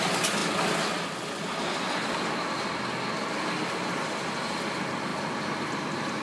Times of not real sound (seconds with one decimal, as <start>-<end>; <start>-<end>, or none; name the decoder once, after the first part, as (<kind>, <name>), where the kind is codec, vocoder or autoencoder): 5.1-6.2 (vocoder, BigVGAN v2)